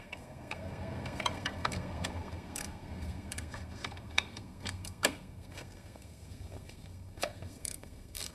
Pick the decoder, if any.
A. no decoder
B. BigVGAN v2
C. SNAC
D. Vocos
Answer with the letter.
C